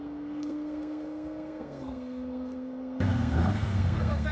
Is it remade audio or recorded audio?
remade